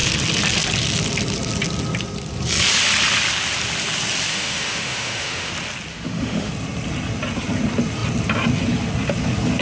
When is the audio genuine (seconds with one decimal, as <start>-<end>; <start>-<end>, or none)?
0.0-4.3; 5.5-5.9; 6.5-9.6